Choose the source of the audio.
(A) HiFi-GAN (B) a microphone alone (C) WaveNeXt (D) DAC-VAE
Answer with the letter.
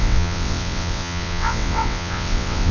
C